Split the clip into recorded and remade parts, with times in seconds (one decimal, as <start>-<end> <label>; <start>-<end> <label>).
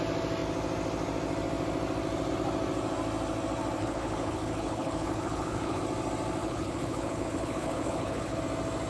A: 0.0-3.8 recorded; 3.8-5.8 remade; 5.8-6.4 recorded; 6.4-8.4 remade; 8.4-8.9 recorded